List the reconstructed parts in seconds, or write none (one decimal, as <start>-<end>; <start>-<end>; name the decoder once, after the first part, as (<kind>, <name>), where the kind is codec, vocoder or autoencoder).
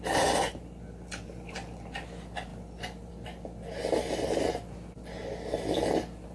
none